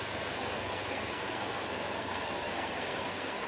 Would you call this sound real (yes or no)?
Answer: no